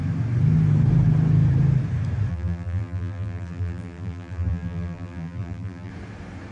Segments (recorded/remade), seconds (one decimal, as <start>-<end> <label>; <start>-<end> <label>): 0.0-2.3 recorded; 2.3-5.9 remade; 5.9-6.5 recorded